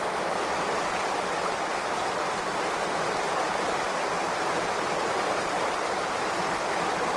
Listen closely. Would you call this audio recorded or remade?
recorded